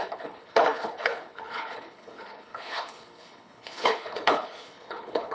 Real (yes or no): no